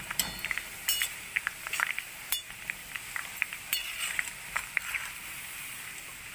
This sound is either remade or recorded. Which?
recorded